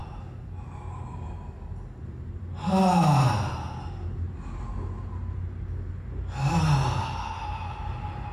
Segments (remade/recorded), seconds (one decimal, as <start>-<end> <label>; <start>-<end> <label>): 0.0-8.3 recorded